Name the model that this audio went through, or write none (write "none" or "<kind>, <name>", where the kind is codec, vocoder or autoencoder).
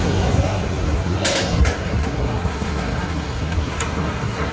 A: codec, SNAC